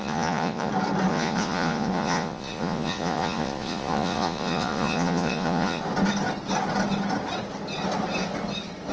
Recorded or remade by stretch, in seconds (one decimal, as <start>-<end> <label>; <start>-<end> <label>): 0.0-0.7 remade; 0.7-1.1 recorded; 1.1-5.8 remade; 5.8-8.9 recorded